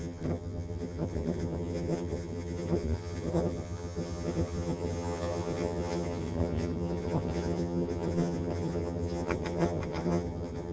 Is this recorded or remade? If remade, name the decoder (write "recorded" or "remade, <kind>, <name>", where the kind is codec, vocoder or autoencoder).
remade, vocoder, HiFi-GAN